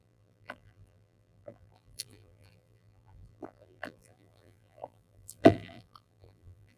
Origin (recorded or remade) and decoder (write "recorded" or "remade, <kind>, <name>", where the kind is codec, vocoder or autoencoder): remade, vocoder, BigVGAN v2